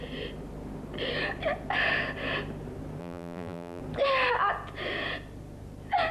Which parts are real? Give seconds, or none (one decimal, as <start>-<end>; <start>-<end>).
0.0-3.0; 3.8-6.1